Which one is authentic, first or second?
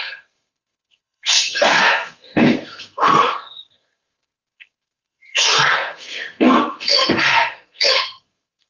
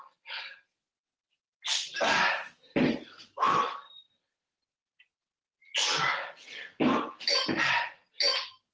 second